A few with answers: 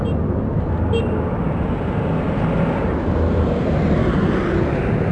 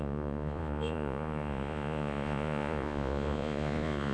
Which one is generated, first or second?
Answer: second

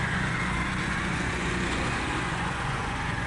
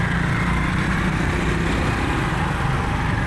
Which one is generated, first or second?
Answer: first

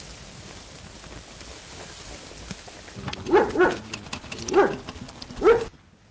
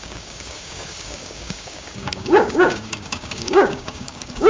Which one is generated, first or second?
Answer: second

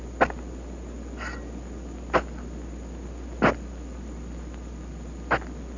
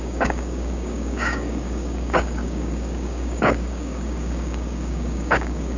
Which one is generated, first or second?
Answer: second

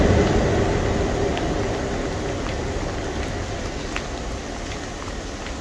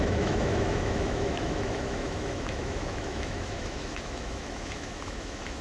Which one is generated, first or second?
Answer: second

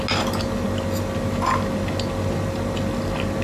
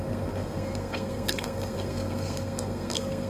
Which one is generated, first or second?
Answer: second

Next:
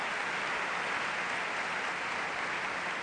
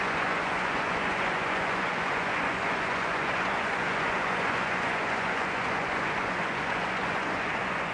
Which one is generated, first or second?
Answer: second